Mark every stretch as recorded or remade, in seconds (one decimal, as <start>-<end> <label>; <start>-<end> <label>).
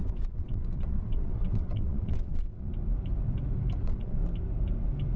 0.0-2.7 remade; 2.7-3.8 recorded; 3.8-4.2 remade; 4.2-5.2 recorded